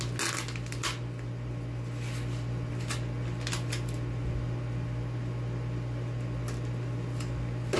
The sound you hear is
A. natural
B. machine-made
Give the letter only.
A